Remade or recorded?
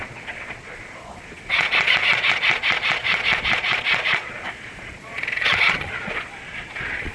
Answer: remade